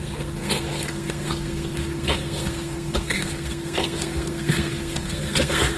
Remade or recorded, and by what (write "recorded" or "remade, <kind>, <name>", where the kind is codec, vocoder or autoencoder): remade, codec, SNAC